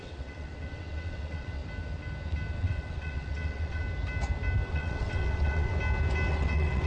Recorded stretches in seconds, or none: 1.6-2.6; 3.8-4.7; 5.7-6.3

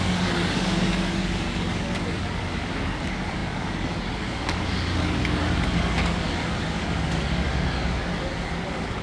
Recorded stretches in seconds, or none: none

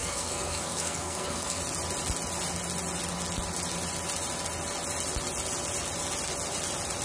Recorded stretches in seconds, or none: 1.6-7.0

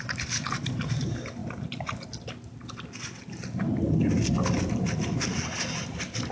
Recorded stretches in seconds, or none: 0.0-6.3

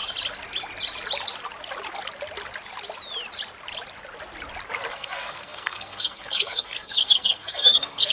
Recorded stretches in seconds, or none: 0.0-4.9

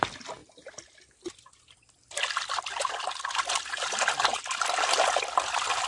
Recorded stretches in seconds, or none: 0.0-5.9

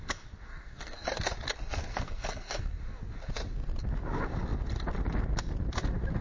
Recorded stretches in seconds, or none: 0.0-0.5; 1.2-1.8; 2.8-6.2

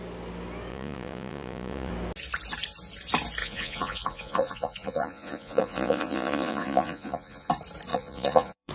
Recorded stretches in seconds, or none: 0.0-0.7; 1.9-3.4; 7.5-7.9